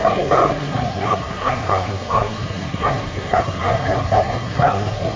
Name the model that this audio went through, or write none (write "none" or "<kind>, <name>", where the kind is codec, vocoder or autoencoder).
codec, SNAC